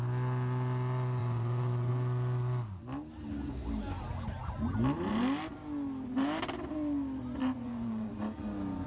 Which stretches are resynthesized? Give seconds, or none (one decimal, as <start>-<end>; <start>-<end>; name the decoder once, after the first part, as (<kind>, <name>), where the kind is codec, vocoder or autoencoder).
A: 1.2-1.9 (vocoder, Vocos); 7.4-8.1